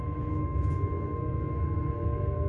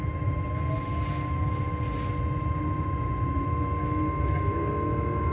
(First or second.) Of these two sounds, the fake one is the first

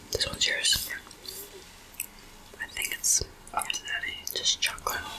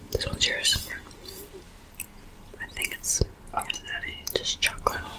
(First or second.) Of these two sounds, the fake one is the second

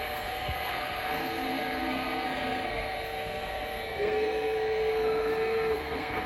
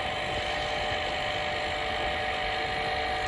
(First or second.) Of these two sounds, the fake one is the first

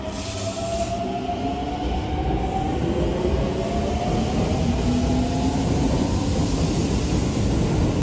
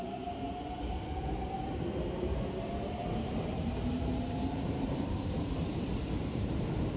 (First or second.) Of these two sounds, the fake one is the second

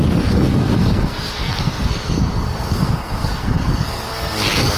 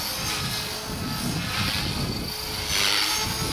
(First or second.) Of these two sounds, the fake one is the first